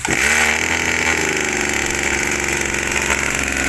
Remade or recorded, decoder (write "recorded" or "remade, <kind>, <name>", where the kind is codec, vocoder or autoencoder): recorded